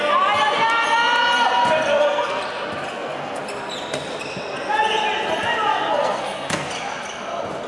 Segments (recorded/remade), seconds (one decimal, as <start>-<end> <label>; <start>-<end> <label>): 0.0-1.9 recorded; 1.9-2.4 remade; 2.4-2.9 recorded; 2.9-3.4 remade; 3.4-5.7 recorded; 5.7-6.7 remade; 6.7-7.7 recorded